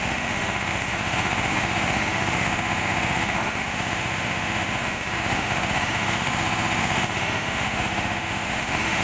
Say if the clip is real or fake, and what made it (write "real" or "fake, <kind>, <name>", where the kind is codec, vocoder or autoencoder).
fake, autoencoder, DAC-VAE